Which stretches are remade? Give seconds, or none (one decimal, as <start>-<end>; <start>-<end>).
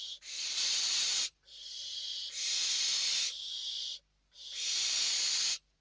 0.0-1.8; 2.5-5.8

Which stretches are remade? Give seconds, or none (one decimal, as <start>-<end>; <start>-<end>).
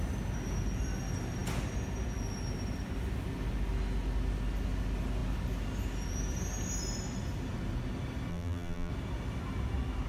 8.3-8.9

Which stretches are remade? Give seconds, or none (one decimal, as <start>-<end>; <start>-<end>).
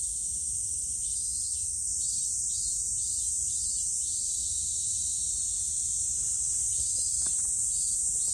0.0-8.3